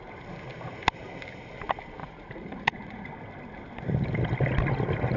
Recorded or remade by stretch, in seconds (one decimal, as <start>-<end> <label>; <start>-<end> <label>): 0.0-2.0 recorded; 2.0-3.1 remade; 3.1-5.2 recorded

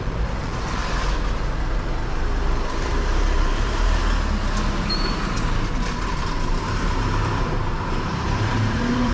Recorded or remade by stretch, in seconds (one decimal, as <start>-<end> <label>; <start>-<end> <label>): 0.0-0.8 remade; 0.8-1.6 recorded; 1.6-4.0 remade; 4.0-6.6 recorded; 6.6-9.1 remade

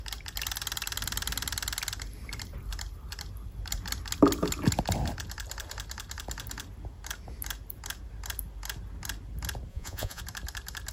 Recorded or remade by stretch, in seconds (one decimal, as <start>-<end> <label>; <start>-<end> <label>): 0.0-9.7 recorded; 9.7-10.2 remade; 10.2-10.9 recorded

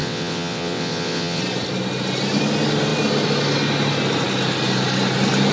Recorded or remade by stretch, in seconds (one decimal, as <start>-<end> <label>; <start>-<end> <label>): 0.0-1.4 remade; 1.4-5.5 recorded

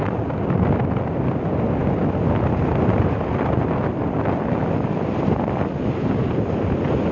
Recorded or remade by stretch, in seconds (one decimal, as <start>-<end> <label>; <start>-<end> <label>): 0.0-7.1 recorded

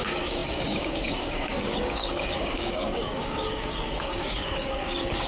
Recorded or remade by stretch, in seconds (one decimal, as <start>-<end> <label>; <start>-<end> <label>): 0.0-5.3 remade

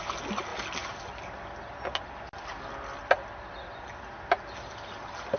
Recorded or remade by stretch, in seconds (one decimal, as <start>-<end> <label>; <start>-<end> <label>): 0.0-5.4 recorded